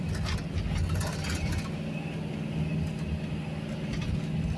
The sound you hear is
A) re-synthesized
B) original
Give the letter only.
B